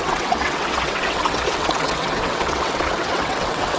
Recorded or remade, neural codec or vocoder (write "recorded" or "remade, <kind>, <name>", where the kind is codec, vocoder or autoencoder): remade, vocoder, WaveNeXt